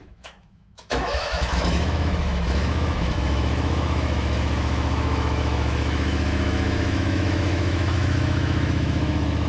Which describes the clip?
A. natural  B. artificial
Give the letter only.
B